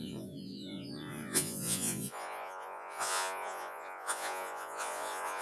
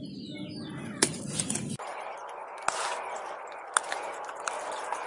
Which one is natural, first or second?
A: second